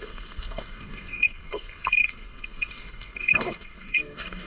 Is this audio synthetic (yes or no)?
yes